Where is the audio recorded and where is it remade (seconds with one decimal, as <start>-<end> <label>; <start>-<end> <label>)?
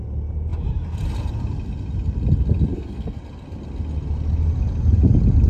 0.0-2.7 recorded; 2.7-3.2 remade; 3.2-5.5 recorded